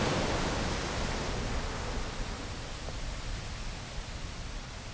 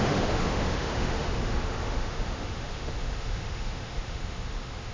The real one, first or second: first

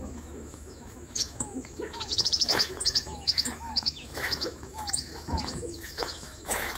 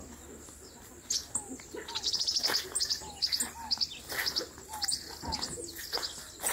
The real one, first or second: second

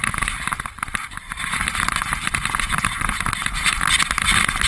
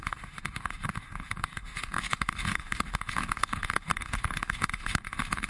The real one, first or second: first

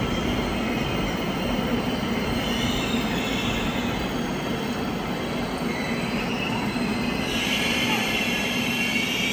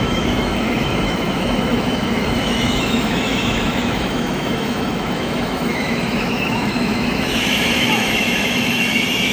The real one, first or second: first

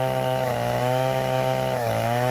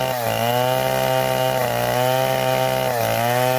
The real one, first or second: second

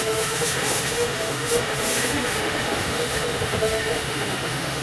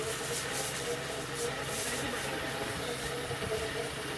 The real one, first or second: second